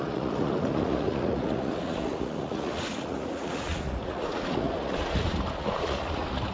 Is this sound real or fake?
fake